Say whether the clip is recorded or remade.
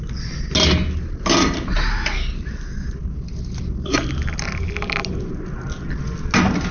recorded